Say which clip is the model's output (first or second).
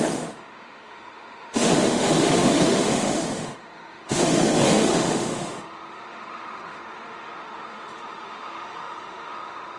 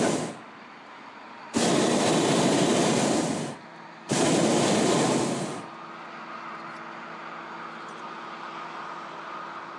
first